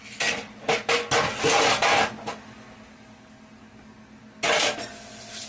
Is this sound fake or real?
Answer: real